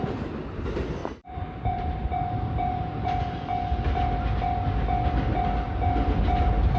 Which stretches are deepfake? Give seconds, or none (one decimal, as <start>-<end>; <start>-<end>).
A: 1.0-3.2